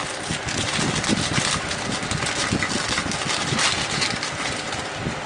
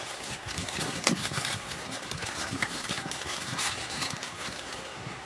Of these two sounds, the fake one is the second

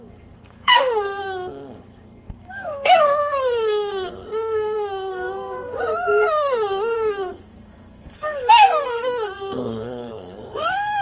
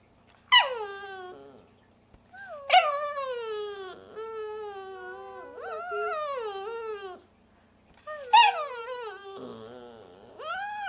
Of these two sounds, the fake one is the first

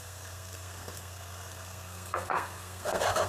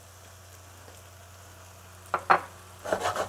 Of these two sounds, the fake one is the first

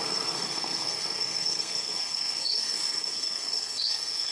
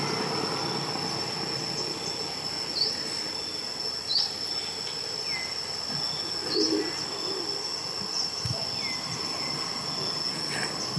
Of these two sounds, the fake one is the first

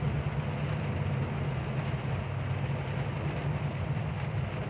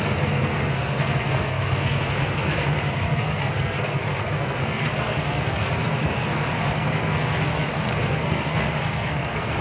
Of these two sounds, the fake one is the second